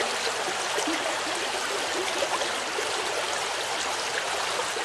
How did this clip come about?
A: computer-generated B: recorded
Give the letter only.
B